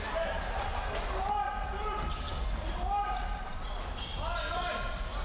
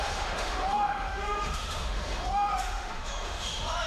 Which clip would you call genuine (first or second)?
first